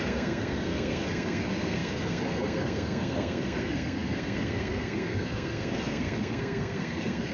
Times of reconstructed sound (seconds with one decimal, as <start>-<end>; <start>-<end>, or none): 0.0-7.3